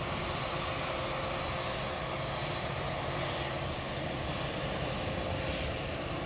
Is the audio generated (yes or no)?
no